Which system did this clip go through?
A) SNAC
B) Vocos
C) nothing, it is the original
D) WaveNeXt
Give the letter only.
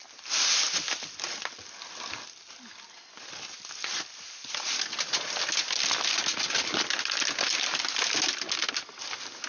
C